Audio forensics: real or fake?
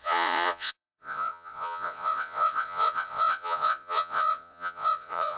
fake